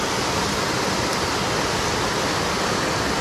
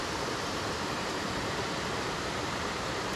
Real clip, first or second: first